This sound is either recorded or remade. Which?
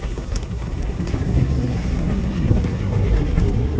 remade